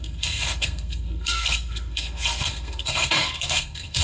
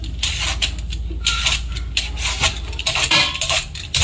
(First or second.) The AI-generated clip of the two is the first